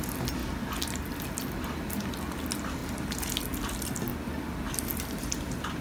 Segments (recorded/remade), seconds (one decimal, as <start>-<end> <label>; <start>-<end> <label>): 0.0-5.8 recorded